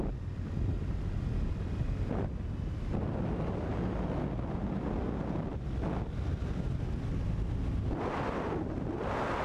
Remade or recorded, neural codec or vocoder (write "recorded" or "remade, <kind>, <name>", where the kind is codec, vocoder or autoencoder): recorded